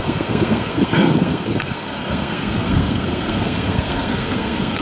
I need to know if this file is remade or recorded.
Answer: remade